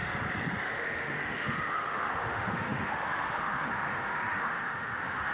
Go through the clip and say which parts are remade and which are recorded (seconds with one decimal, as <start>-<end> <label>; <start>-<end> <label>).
0.0-0.6 recorded; 0.6-5.3 remade

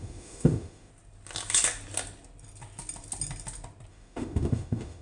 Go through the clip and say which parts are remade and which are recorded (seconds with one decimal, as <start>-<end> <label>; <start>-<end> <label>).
0.0-0.9 remade; 0.9-3.9 recorded; 3.9-5.0 remade

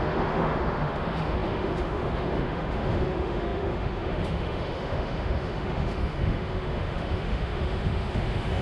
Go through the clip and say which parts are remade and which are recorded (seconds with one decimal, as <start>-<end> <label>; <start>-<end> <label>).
0.0-8.6 remade

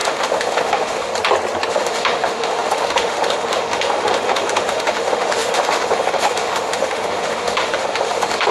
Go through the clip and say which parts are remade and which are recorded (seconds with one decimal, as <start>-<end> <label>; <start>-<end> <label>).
0.0-1.1 remade; 1.1-1.7 recorded; 1.7-8.5 remade

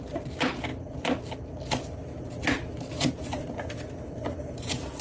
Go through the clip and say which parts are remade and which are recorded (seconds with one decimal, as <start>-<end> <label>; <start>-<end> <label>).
0.0-5.0 recorded